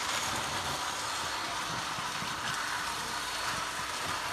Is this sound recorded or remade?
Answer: recorded